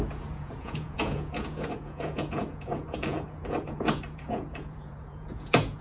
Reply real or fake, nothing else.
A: fake